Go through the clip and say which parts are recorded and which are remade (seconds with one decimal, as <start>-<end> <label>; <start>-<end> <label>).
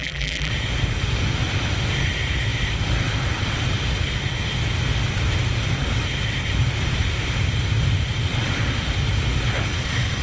0.0-0.5 remade; 0.5-10.2 recorded